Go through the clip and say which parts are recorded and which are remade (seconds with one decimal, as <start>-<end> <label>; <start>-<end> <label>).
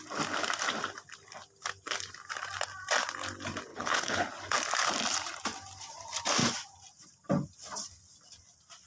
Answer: 0.0-3.7 recorded; 3.7-4.3 remade; 4.3-8.9 recorded